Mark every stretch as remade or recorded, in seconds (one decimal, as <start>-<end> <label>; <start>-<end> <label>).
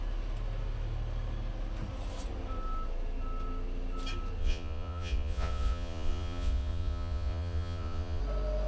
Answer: 0.0-4.4 recorded; 4.4-8.2 remade; 8.2-8.7 recorded